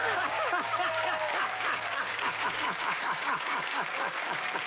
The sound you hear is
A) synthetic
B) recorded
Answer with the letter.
A